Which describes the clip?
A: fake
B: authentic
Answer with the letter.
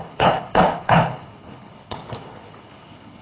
A